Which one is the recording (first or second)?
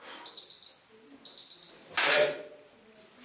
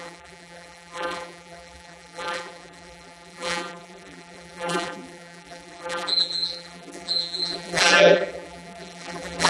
first